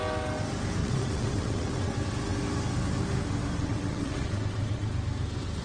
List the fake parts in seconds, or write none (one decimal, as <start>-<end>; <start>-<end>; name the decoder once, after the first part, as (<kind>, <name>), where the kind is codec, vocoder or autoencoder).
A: 0.8-1.9 (vocoder, WaveNeXt); 3.6-4.9